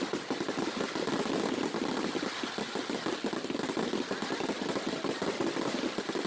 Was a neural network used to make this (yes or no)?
no